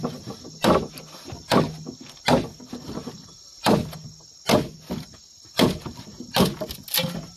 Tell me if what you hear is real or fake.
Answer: real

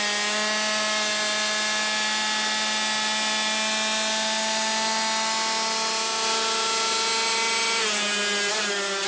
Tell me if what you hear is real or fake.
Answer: real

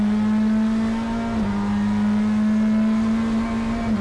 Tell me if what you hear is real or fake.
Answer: real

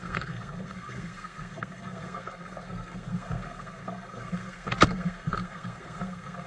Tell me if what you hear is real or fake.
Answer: fake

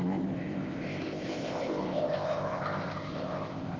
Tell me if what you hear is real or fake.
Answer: fake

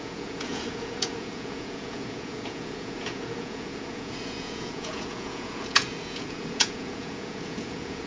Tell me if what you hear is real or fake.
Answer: fake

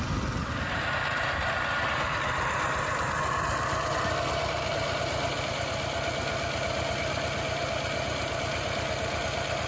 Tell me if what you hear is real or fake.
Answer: real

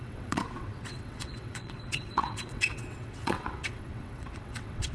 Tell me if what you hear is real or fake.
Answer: fake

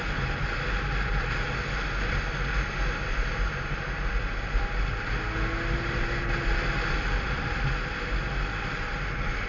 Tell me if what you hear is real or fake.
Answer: real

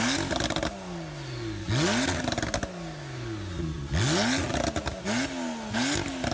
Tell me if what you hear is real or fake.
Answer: real